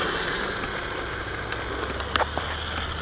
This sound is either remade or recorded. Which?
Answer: recorded